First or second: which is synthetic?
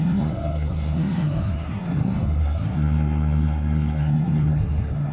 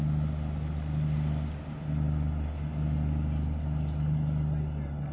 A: first